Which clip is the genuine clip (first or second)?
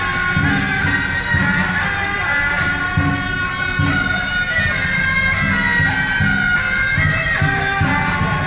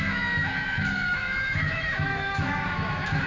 first